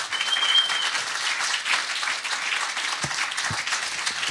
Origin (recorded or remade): recorded